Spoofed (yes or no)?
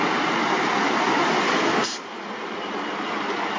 no